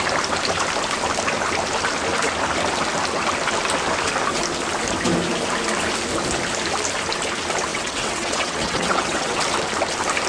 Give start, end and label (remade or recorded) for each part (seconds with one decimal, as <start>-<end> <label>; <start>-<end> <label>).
0.0-7.7 recorded; 7.7-9.4 remade; 9.4-10.3 recorded